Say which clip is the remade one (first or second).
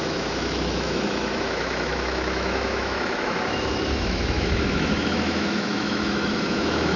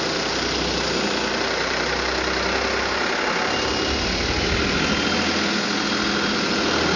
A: first